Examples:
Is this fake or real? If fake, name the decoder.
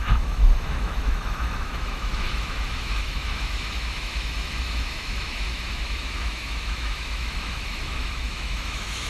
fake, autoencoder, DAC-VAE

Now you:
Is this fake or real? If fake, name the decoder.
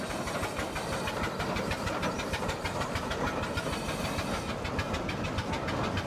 real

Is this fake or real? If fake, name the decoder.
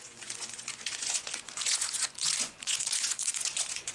fake, vocoder, Vocos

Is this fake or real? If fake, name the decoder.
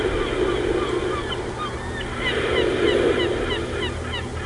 real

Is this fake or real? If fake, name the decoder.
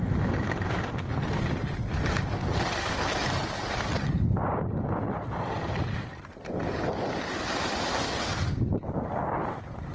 real